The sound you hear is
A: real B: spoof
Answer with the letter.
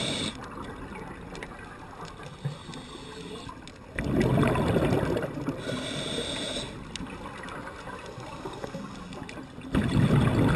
A